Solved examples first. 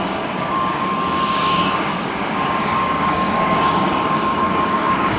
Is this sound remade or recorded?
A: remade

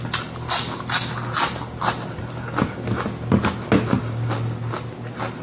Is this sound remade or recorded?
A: recorded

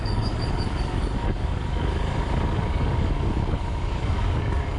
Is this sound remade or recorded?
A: remade